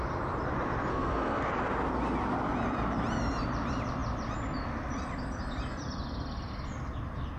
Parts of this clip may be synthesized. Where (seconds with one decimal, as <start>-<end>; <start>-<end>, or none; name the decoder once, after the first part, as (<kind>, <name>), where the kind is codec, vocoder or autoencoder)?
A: 0.9-1.5 (codec, SNAC)